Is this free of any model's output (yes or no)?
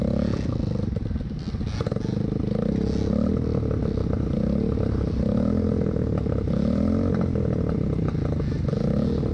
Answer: yes